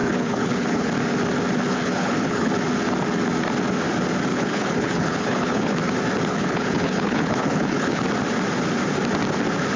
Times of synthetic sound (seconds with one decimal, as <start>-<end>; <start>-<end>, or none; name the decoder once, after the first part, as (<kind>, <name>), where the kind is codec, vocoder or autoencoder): 0.0-0.9 (codec, HILCodec); 1.7-2.5; 4.3-5.8; 6.3-8.0